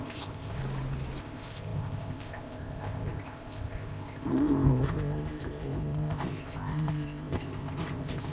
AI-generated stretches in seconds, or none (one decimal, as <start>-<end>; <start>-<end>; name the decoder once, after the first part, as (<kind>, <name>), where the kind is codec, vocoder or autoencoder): 0.0-0.6 (codec, ZipCodec); 1.2-8.3